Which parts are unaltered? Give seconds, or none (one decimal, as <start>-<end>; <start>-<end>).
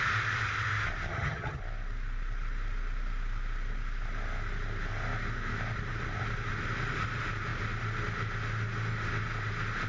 0.0-1.1; 1.6-9.9